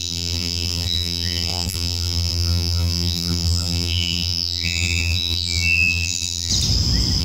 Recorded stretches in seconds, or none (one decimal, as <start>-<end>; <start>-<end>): 6.5-7.2